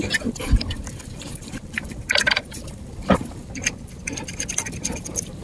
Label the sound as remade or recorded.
remade